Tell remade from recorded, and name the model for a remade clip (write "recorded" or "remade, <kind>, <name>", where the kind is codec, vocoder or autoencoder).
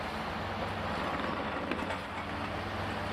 recorded